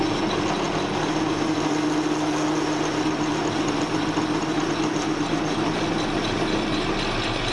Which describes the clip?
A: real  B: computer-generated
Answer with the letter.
A